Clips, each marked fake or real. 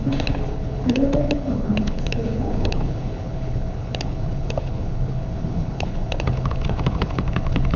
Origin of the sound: fake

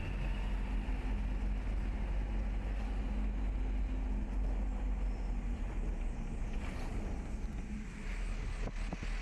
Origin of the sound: real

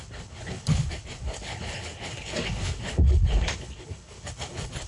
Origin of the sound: fake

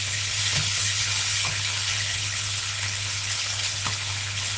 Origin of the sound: fake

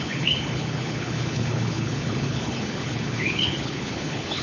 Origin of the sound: fake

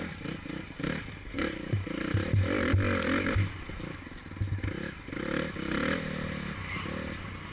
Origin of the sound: real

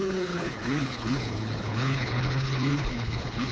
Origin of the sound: fake